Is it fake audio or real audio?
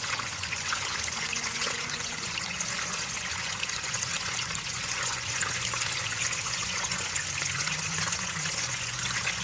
fake